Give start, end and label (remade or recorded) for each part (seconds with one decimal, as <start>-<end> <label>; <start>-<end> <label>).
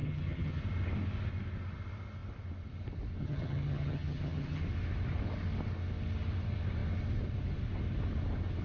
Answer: 0.0-0.6 remade; 0.6-3.2 recorded; 3.2-4.6 remade; 4.6-8.6 recorded